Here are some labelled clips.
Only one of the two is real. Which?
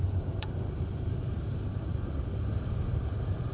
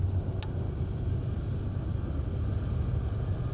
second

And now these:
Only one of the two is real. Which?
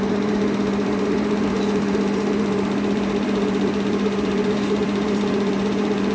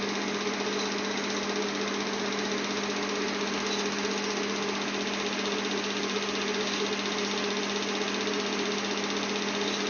second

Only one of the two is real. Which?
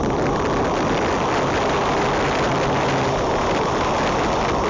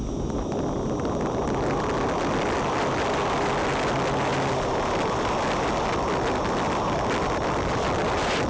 second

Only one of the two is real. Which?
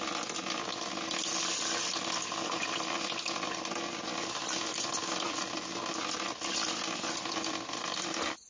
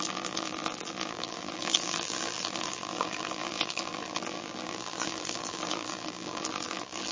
first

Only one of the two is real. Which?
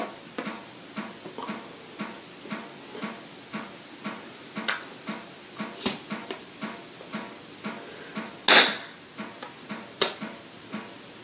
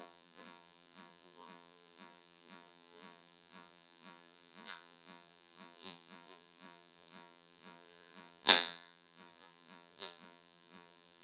first